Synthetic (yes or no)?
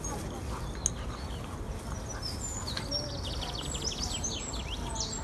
no